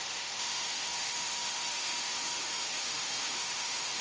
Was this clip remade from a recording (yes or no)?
yes